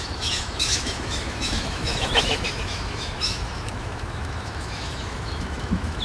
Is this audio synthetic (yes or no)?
yes